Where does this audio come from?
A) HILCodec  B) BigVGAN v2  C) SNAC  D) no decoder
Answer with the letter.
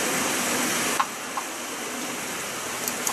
D